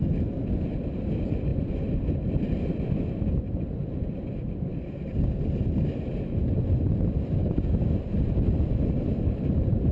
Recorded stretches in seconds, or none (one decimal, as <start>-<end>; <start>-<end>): 0.0-7.4; 7.9-9.9